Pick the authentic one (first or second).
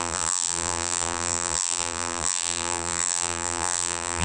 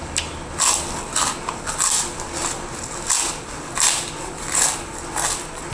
second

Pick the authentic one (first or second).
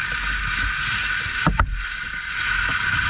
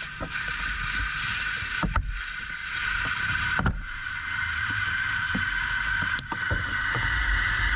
first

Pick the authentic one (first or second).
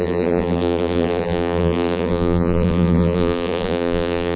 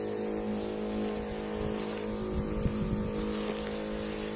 second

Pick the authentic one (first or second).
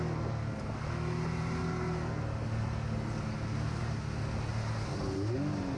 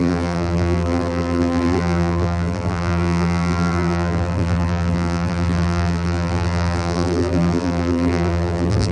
first